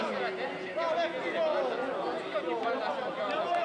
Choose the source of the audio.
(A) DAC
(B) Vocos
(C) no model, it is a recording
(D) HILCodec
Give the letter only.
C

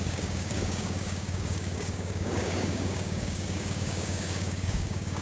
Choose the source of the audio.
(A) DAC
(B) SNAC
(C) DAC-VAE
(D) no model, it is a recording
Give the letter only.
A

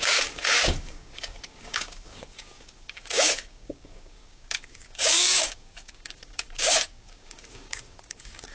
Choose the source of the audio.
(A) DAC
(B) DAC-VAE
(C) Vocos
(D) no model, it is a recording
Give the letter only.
A